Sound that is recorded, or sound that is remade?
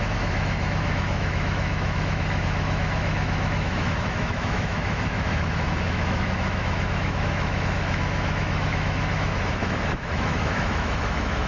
remade